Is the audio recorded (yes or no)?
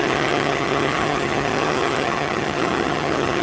no